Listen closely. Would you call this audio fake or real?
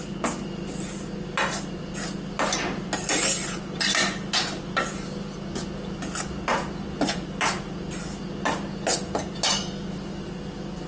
real